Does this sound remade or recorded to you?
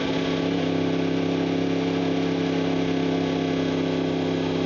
recorded